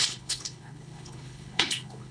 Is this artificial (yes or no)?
yes